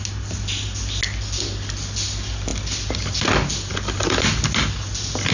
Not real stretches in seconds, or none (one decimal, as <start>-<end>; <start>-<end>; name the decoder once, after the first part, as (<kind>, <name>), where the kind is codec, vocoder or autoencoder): none